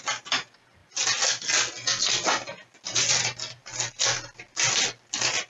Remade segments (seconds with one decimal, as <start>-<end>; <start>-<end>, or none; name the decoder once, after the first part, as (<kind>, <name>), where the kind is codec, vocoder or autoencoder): none